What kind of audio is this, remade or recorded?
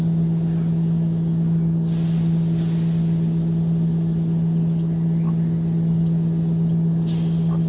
recorded